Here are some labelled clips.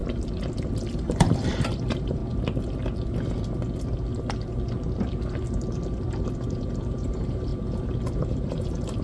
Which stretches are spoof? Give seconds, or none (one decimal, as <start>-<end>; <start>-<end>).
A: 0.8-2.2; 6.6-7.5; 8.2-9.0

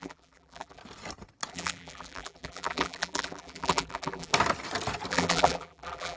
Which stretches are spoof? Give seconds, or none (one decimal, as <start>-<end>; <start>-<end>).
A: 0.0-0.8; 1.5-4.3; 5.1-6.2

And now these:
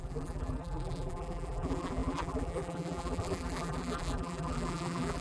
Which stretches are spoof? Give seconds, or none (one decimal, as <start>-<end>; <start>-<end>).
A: 0.0-5.2